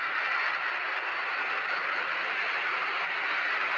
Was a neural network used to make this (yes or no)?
no